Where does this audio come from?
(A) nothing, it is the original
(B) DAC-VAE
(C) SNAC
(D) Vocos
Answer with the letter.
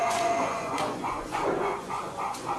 D